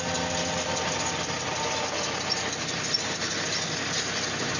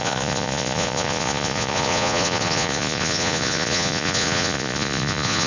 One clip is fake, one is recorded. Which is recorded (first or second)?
first